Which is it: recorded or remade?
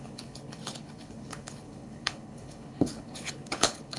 remade